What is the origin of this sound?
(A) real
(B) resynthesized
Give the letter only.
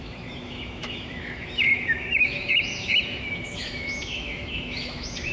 B